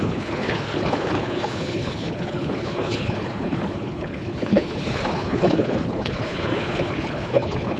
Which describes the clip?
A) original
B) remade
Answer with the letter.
B